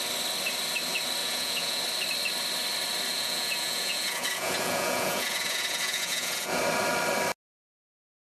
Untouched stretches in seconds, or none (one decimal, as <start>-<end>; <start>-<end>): 0.0-1.2; 1.8-3.1; 6.6-8.4